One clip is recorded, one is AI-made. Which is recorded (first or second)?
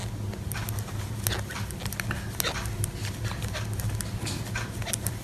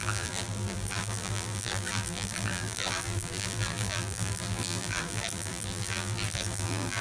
first